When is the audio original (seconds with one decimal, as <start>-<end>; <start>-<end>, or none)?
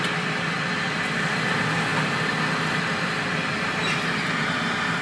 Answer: 0.0-5.0